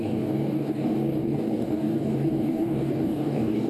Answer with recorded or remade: remade